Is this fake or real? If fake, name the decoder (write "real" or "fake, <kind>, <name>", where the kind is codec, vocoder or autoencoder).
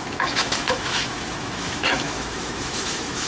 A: fake, autoencoder, DAC-VAE